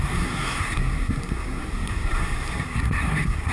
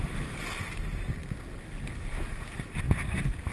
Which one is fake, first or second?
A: first